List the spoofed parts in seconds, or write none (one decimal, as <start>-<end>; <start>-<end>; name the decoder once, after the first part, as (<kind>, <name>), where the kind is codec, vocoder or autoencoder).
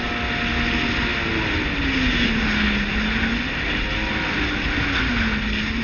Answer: none